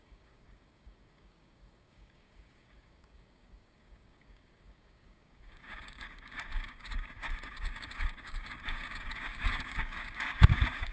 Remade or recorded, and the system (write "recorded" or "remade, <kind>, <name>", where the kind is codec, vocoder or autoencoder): remade, codec, DAC